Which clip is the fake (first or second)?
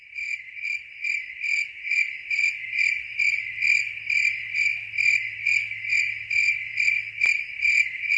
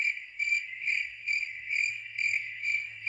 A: second